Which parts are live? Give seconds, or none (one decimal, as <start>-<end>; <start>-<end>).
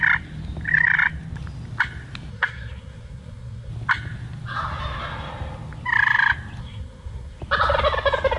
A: 0.0-2.3; 3.7-6.6; 7.4-8.4